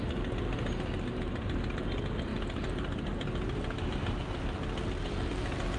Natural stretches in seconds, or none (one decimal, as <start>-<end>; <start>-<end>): 0.0-5.8